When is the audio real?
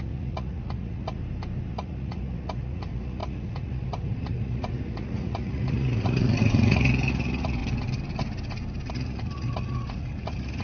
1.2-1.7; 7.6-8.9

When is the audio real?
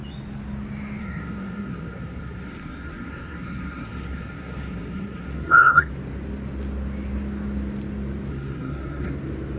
0.0-1.0; 5.9-8.3; 9.1-9.6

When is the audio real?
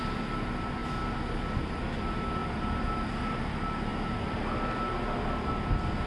0.0-6.1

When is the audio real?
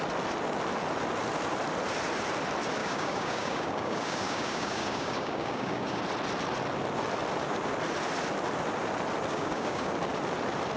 0.0-2.8; 6.0-9.3; 9.9-10.8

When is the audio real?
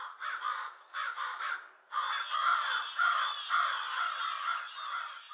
0.0-0.5; 1.5-5.3